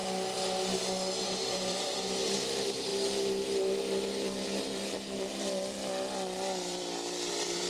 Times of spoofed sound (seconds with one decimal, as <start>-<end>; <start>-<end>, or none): 1.2-2.9; 7.3-7.7